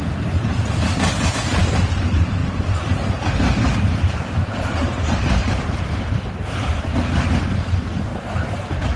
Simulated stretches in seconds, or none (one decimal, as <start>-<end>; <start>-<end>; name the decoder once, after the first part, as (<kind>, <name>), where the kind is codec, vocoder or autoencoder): 0.0-9.0 (vocoder, BigVGAN v2)